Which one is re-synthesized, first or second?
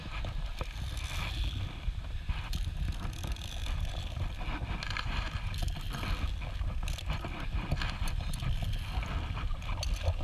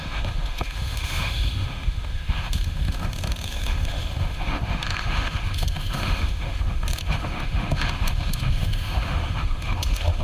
second